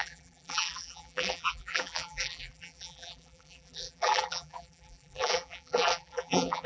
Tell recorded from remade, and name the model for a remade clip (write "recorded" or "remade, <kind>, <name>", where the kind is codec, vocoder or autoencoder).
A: remade, vocoder, BigVGAN v2